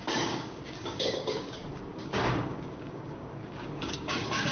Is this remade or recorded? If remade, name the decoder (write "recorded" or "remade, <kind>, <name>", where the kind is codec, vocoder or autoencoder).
remade, codec, DAC